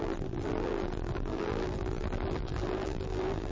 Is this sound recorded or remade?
remade